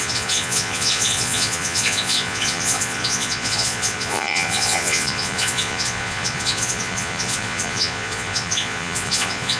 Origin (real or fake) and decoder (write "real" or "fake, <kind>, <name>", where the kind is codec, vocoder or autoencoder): fake, vocoder, Vocos